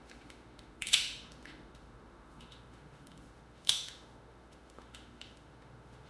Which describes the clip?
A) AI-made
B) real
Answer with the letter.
A